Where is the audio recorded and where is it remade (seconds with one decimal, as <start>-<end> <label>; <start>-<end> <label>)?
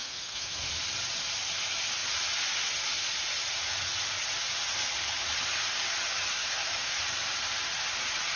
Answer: 0.0-0.7 remade; 0.7-6.4 recorded; 6.4-7.0 remade; 7.0-8.4 recorded